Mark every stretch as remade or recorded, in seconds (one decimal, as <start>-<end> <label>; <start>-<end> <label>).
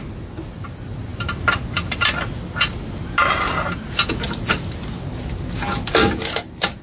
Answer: 0.0-6.8 recorded